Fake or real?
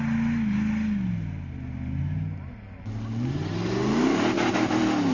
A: real